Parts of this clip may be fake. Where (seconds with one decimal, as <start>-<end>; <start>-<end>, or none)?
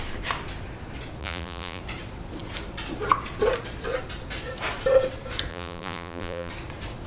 1.2-1.8; 5.5-6.5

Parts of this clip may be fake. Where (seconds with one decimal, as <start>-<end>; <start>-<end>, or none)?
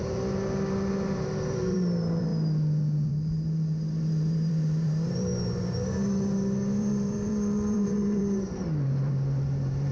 0.0-2.3; 3.1-5.3; 6.8-9.9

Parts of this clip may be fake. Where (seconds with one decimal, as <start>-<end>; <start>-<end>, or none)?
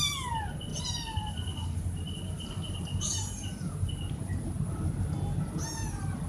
0.7-3.9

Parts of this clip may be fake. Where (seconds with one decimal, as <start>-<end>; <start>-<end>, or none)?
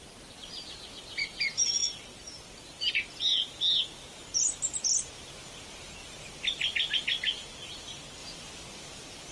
1.8-2.9; 8.2-9.3